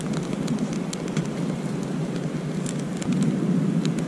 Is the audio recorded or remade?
recorded